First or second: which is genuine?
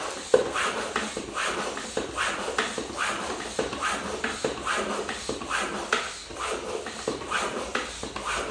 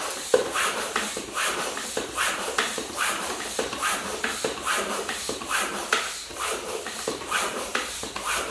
first